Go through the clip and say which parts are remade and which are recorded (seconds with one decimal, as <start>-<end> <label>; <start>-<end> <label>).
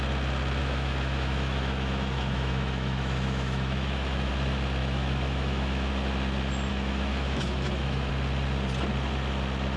0.0-0.6 recorded; 0.6-4.3 remade; 4.3-4.8 recorded; 4.8-5.9 remade; 5.9-6.7 recorded; 6.7-8.1 remade; 8.1-9.8 recorded